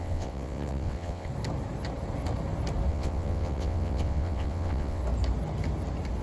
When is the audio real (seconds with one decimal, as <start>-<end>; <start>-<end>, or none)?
1.3-2.9; 5.0-6.2